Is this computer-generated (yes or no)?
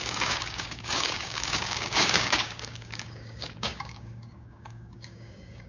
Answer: yes